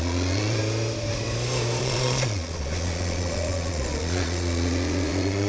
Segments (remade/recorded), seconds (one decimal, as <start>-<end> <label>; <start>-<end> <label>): 0.0-0.6 remade; 0.6-1.8 recorded; 1.8-5.5 remade